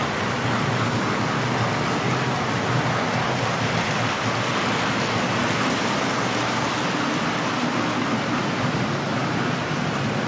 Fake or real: real